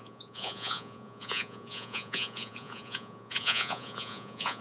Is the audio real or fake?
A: fake